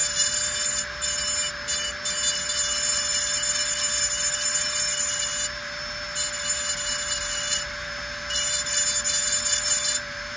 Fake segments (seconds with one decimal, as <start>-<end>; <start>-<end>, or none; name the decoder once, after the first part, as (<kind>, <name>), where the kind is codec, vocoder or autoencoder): none